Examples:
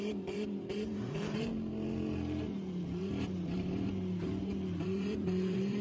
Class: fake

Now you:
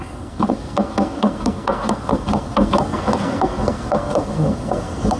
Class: fake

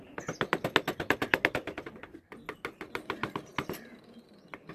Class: real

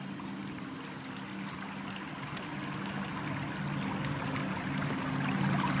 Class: real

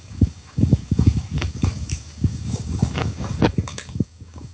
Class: fake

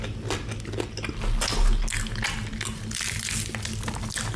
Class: real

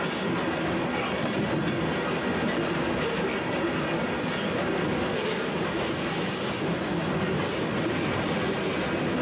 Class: real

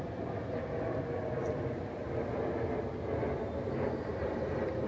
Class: real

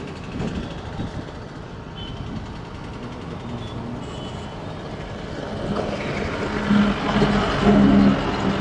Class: real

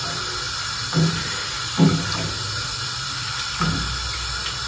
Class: real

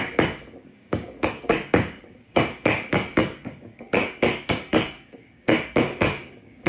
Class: fake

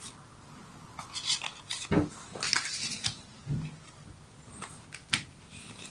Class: real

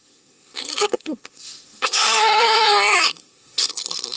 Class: fake